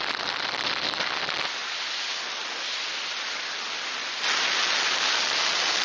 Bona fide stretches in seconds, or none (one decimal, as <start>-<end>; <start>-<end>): 0.0-5.8